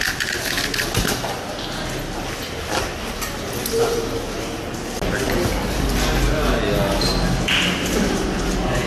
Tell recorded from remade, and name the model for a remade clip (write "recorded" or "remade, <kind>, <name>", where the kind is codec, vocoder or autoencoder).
recorded